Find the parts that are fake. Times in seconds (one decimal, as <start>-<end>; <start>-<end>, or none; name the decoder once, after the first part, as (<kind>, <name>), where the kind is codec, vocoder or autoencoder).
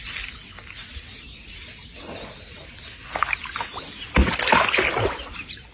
none